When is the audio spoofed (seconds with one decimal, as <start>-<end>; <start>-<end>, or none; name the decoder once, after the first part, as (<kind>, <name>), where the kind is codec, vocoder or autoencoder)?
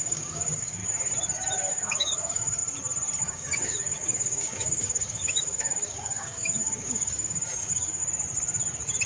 0.0-0.8 (codec, DAC); 1.7-2.6; 3.2-8.0